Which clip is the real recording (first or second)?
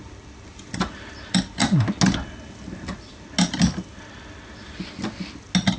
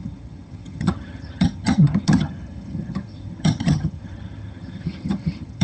first